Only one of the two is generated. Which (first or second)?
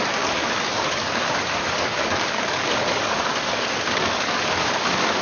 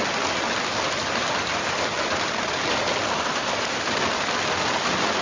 first